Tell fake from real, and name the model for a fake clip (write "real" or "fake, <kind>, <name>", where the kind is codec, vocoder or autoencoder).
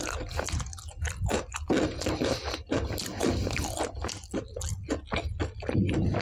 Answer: real